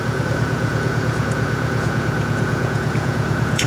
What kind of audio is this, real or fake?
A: fake